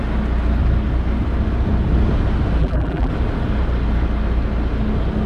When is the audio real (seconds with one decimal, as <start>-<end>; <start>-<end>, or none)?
0.0-2.6; 3.1-5.3

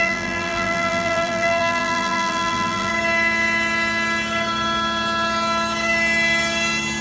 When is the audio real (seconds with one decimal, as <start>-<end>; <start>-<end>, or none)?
2.9-7.0

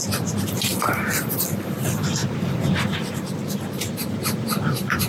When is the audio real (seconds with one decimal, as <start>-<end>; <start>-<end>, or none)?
0.0-0.7; 1.3-2.2; 3.3-4.0

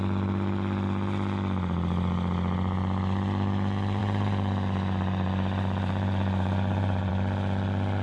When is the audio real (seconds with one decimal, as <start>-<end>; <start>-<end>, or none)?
0.0-4.0; 7.1-8.0

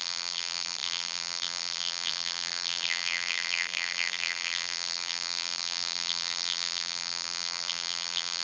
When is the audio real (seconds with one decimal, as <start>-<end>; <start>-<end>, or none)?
none

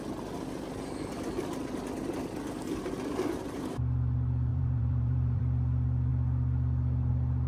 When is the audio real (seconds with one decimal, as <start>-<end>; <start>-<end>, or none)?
0.0-4.5; 5.4-7.5

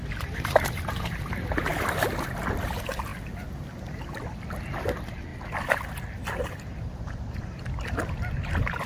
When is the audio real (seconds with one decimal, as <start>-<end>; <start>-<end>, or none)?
1.2-8.9